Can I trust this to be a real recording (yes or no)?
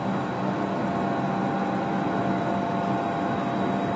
yes